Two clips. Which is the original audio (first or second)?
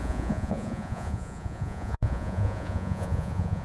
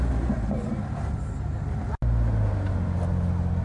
second